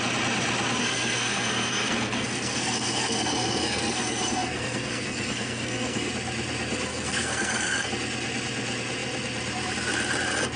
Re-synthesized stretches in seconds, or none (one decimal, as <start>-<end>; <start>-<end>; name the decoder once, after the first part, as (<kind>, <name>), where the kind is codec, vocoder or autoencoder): 0.8-6.1 (codec, SNAC); 6.9-7.9